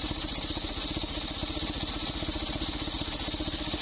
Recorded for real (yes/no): yes